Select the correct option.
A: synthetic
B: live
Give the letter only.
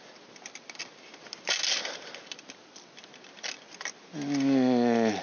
B